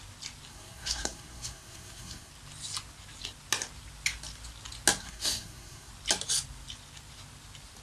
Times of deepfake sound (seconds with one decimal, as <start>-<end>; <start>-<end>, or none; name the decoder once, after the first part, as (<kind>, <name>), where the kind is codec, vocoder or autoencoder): 0.5-2.3 (codec, SNAC); 5.0-5.9